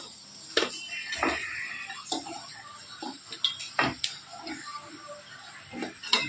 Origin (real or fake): real